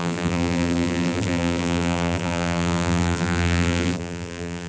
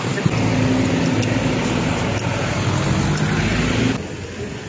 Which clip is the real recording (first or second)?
second